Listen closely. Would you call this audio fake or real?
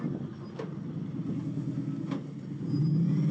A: real